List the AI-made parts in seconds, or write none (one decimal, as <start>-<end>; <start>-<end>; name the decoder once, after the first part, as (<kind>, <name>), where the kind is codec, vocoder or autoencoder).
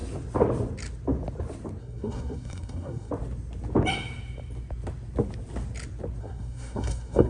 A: 1.8-3.1 (codec, SNAC); 6.2-7.3